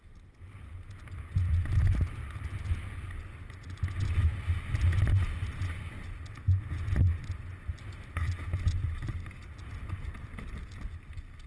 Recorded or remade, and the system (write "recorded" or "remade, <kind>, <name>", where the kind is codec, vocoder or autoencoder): recorded